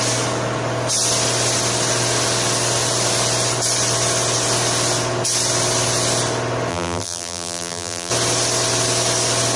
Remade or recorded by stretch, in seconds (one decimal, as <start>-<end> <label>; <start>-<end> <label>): 0.0-6.7 recorded; 6.7-8.1 remade; 8.1-9.6 recorded